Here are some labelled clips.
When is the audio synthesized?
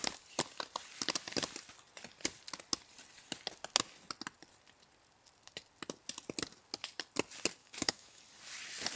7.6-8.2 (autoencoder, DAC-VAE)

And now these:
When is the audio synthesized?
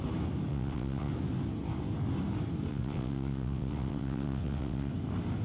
0.5-1.1 (vocoder, WaveNeXt); 2.7-4.9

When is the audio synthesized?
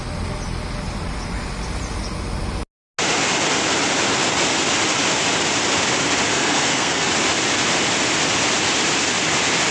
6.3-7.1 (codec, SNAC)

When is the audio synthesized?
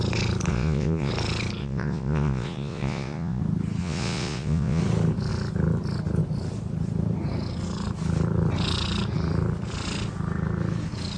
0.5-1.1 (vocoder, Vocos); 1.6-3.4; 3.8-4.8